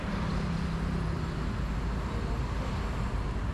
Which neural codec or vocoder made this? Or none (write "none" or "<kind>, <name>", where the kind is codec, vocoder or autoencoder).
none